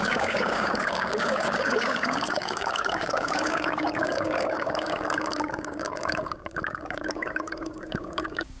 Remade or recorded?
remade